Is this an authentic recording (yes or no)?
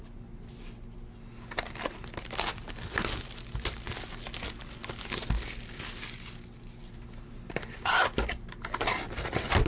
yes